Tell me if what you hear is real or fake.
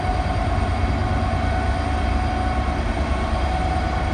real